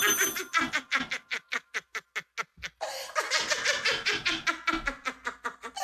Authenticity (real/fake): real